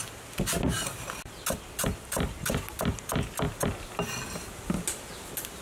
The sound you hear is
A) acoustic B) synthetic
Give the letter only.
A